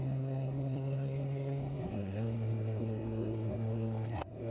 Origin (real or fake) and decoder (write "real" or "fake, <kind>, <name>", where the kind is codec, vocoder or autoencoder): fake, codec, SNAC